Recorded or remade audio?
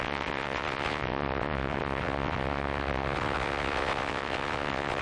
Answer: remade